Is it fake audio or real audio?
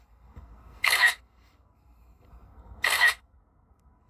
fake